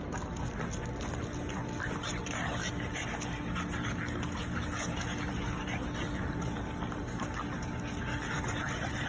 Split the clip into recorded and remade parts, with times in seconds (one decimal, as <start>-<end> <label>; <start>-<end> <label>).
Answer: 0.0-9.1 recorded